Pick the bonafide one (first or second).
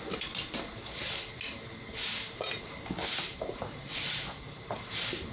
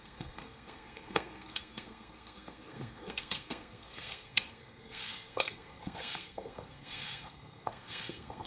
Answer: first